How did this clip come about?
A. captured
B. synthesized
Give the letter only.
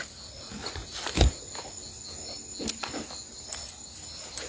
A